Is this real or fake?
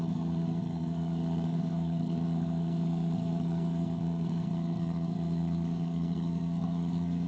fake